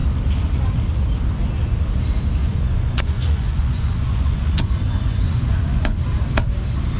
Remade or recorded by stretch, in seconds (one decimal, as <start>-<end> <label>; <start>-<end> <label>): 0.0-2.4 recorded; 2.4-6.0 remade; 6.0-7.0 recorded